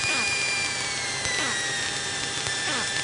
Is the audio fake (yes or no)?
yes